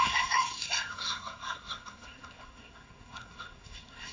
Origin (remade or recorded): remade